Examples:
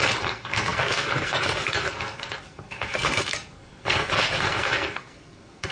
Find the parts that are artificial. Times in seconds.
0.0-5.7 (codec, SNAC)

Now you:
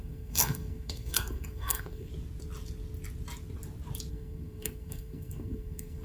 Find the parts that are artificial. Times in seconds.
0.0-2.1 (codec, SNAC); 4.1-6.0

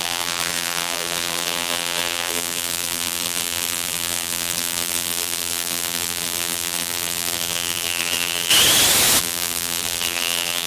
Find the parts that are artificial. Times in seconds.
0.0-8.5 (vocoder, BigVGAN v2); 9.2-10.7

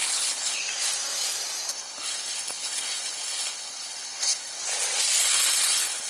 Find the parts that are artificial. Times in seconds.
0.0-0.6 (codec, HILCodec); 1.7-4.6; 5.2-6.1